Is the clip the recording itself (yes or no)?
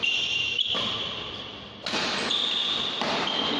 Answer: yes